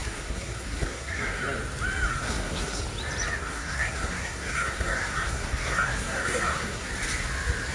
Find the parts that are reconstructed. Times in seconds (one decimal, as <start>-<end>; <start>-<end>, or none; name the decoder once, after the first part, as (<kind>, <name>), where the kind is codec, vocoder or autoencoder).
0.0-1.4 (codec, SNAC); 2.1-2.8; 3.4-6.9